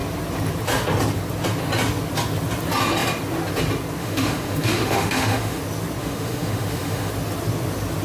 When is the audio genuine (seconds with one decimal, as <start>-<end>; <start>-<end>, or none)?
0.0-4.0; 5.6-6.0; 7.1-8.0